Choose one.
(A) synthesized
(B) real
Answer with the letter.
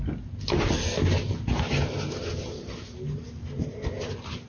B